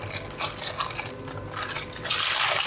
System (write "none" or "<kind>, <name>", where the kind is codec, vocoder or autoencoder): none